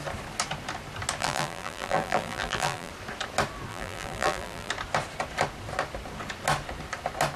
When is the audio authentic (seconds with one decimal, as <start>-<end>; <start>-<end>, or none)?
0.0-1.2; 2.9-3.7; 4.7-7.4